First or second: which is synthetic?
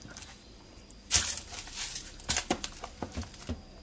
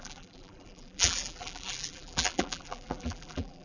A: second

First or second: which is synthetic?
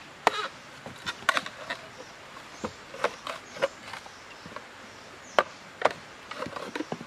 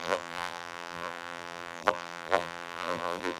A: second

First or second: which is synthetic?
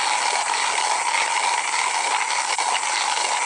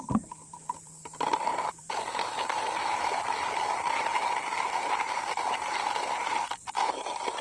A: second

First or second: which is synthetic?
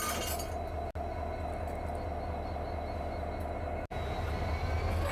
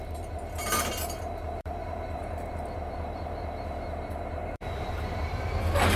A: second